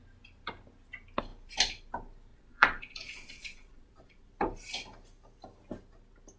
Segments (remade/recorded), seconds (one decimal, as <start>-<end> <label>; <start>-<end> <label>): 0.0-2.3 recorded; 2.3-4.3 remade; 4.3-6.4 recorded